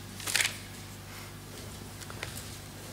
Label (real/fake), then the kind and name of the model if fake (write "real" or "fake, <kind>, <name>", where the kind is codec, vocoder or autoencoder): real